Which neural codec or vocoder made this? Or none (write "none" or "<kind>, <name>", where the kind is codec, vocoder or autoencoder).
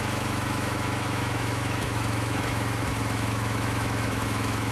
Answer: autoencoder, DAC-VAE